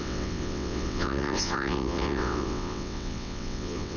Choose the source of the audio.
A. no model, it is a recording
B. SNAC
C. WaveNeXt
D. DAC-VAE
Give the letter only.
C